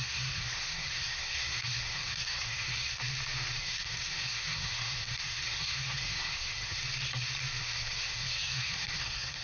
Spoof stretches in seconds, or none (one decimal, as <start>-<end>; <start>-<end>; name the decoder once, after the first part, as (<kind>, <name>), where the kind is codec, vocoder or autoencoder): 0.0-3.0 (codec, SNAC); 3.6-6.8; 7.6-9.4